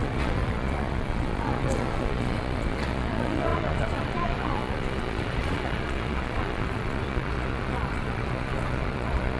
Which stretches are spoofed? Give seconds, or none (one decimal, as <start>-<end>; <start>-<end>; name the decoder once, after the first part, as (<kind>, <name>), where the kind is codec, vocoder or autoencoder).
0.0-9.4 (vocoder, Vocos)